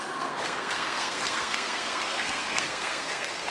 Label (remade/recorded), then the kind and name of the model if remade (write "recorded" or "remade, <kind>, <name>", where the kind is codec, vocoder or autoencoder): remade, codec, SNAC